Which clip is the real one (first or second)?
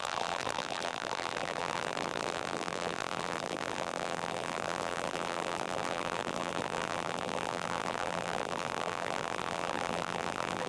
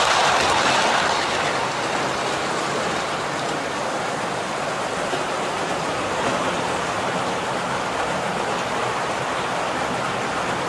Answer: second